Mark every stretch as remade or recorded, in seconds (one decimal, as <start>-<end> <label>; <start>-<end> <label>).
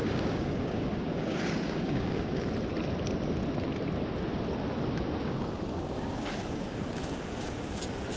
0.0-2.5 remade; 2.5-5.2 recorded; 5.2-7.6 remade; 7.6-8.2 recorded